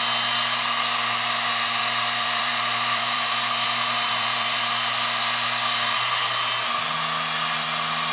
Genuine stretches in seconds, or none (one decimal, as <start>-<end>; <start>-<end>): 0.0-1.8; 4.6-8.1